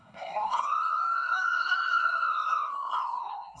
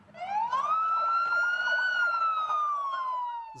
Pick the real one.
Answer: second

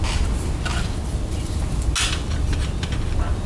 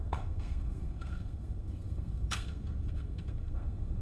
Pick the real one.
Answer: first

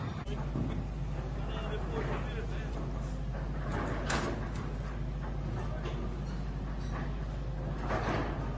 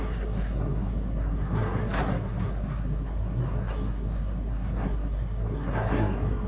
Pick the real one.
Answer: first